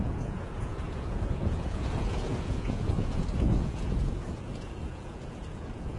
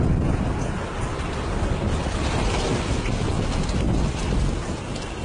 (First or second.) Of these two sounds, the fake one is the first